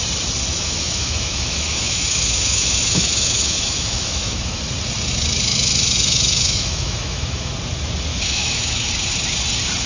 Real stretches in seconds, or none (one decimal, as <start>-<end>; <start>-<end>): 0.0-0.5; 4.6-5.5; 7.5-8.1; 8.9-9.9